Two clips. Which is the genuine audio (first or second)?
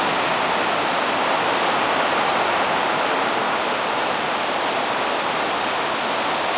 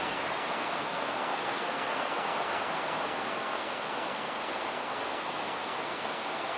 first